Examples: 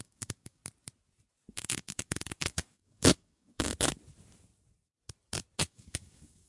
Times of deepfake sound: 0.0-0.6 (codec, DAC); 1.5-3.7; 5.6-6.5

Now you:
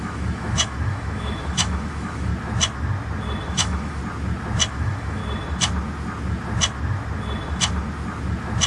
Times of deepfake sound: 0.0-2.3 (autoencoder, DAC-VAE); 3.5-4.0; 4.7-5.2

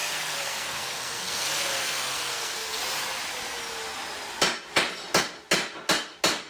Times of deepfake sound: 0.0-2.8 (codec, SNAC)

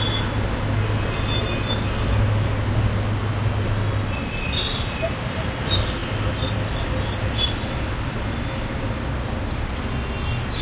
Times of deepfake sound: none

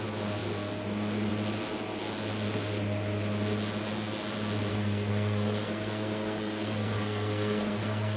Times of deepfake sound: 4.7-8.2 (codec, SNAC)

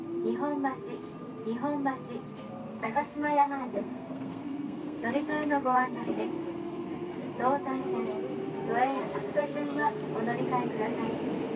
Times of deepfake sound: 2.6-6.3 (codec, SNAC); 8.8-10.1

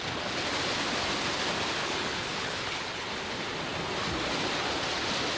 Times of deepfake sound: 1.8-3.1 (codec, HILCodec)

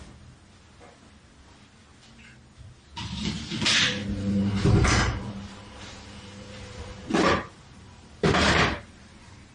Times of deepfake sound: 4.0-9.5 (vocoder, BigVGAN v2)